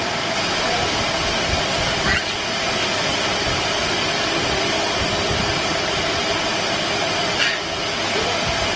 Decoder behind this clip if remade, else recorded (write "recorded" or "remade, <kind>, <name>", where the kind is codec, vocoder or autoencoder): recorded